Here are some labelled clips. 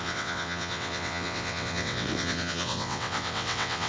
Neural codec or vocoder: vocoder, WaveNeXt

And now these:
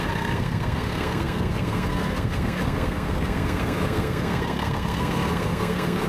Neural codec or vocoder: codec, SNAC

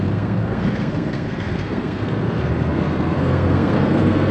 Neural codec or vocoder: codec, SNAC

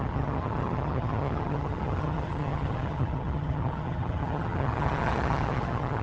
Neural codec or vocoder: vocoder, HiFi-GAN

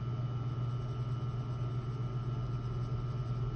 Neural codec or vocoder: none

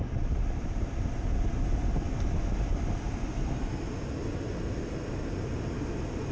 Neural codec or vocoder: none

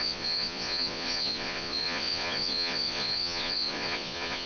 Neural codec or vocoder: vocoder, Vocos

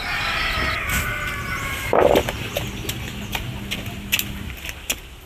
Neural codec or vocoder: none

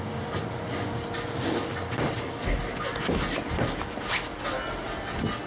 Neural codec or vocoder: none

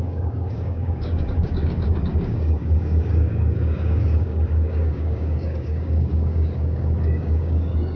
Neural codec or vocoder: codec, DAC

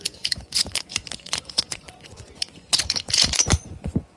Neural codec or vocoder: vocoder, Vocos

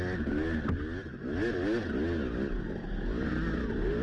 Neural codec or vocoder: none